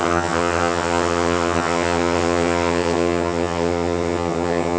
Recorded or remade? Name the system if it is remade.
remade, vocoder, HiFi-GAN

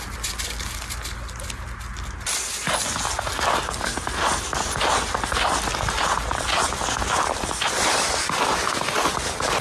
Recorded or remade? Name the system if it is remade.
recorded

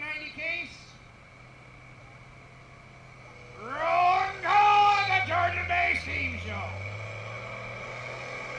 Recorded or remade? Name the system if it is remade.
recorded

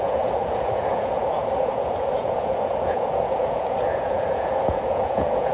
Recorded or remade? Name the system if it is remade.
remade, vocoder, Vocos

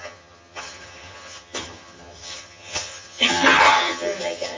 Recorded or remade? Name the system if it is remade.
remade, vocoder, HiFi-GAN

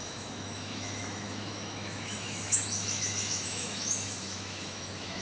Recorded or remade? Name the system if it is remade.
remade, autoencoder, DAC-VAE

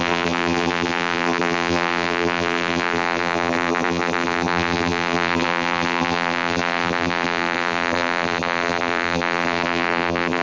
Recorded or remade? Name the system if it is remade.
remade, vocoder, BigVGAN v2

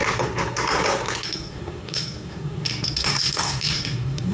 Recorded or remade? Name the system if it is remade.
remade, codec, SNAC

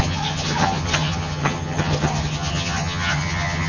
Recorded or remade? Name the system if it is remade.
remade, vocoder, HiFi-GAN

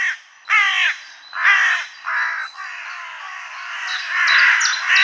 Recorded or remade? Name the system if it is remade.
recorded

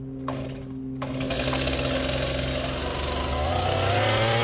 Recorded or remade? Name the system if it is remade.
recorded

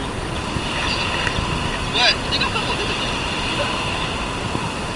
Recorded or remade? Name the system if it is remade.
recorded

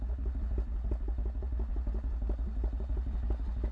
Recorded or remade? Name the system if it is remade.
recorded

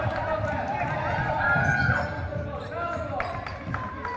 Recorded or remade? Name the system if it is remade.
recorded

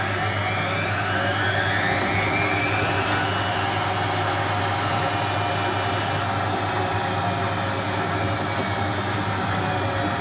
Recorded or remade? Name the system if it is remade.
recorded